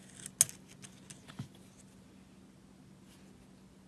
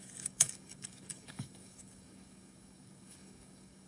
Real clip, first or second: first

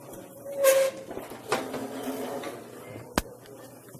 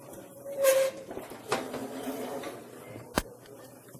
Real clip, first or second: first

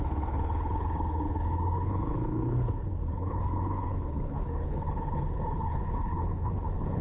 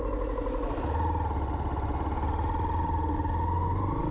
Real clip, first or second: second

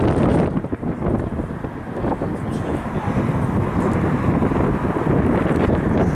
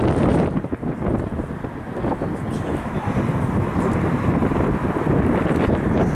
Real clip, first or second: first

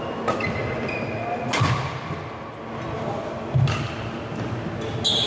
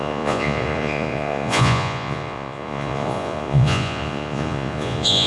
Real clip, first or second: first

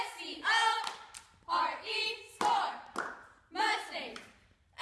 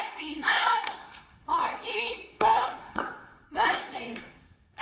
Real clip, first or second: first